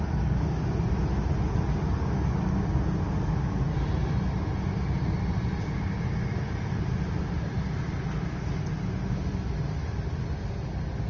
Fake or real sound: real